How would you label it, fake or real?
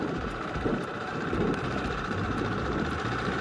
fake